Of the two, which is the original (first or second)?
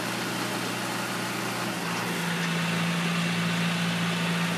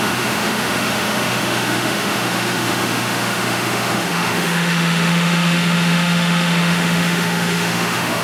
first